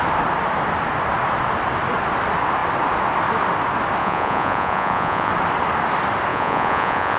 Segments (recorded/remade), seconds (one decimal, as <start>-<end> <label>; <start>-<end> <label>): 0.0-4.0 recorded; 4.0-5.3 remade; 5.3-6.3 recorded; 6.3-7.2 remade